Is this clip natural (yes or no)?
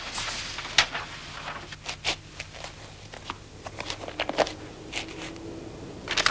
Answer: yes